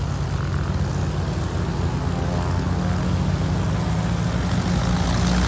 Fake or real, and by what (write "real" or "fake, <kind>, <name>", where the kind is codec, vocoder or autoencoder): real